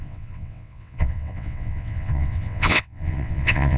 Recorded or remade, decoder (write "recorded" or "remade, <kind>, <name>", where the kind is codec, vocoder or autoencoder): remade, vocoder, WaveNeXt